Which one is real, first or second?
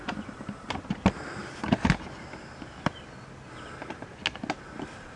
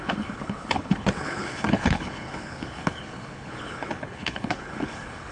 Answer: first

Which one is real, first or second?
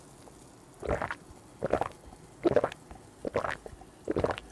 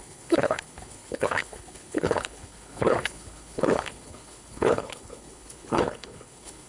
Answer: first